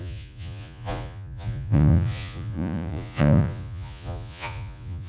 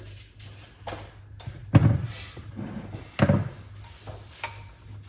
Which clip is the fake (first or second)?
first